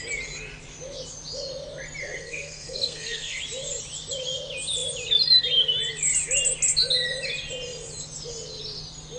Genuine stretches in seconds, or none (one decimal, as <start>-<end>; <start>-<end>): 0.0-2.0; 3.4-9.2

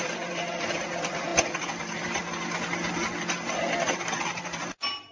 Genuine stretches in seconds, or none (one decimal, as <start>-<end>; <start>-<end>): 0.0-5.1

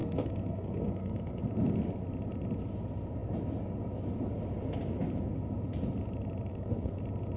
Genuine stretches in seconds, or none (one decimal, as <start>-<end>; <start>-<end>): 1.4-6.5; 7.0-7.4

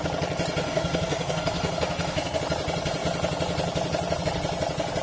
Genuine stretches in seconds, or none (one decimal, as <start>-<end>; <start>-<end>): 0.0-0.6; 2.4-5.0

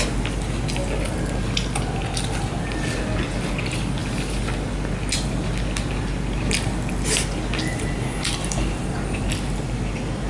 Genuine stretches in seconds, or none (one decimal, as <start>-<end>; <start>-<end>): 0.0-10.3

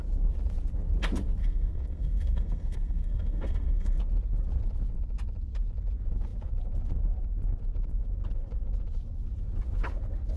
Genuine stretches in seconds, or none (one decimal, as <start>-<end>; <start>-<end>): 0.0-1.4; 4.0-10.4